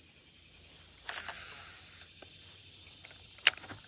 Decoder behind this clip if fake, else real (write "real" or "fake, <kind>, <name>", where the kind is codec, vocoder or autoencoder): real